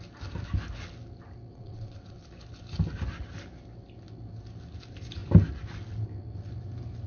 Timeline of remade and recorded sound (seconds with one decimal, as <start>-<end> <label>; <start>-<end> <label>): 0.0-1.5 recorded; 1.5-2.2 remade; 2.2-7.1 recorded